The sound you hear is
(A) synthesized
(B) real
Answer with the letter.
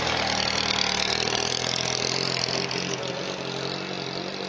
B